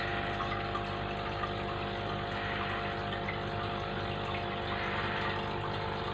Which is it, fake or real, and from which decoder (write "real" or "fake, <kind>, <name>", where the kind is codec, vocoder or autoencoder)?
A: real